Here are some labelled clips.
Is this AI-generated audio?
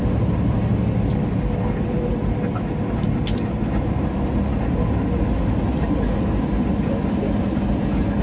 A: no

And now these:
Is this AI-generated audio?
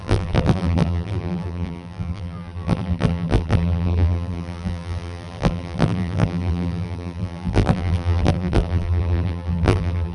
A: yes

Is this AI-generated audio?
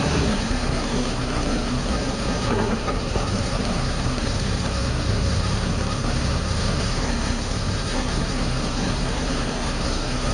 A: yes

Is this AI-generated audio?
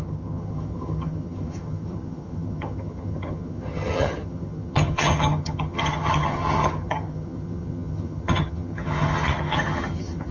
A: yes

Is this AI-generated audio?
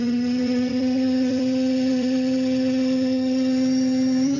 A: yes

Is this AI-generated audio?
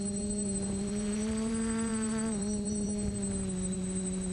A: yes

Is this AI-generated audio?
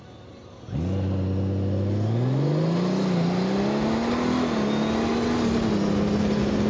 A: no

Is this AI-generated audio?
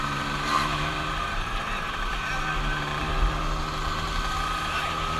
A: yes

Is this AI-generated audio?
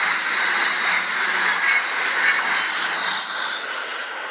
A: no